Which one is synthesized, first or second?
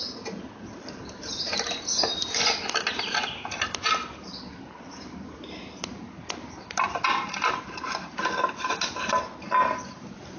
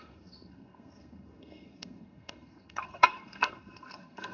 second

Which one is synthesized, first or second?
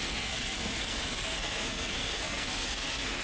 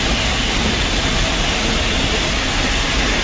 first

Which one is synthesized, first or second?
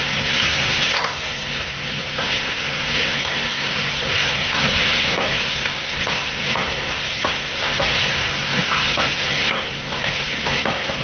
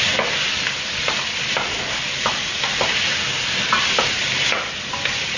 first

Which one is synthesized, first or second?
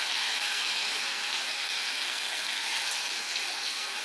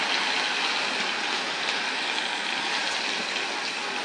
first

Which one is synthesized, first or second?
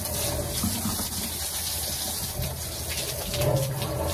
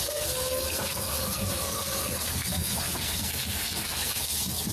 second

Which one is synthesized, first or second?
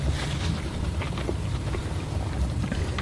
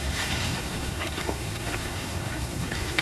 second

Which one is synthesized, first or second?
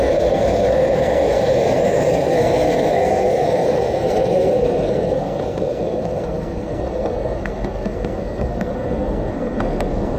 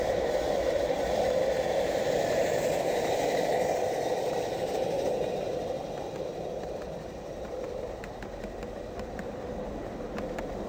first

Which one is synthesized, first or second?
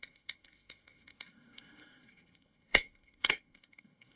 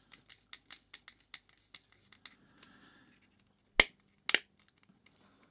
first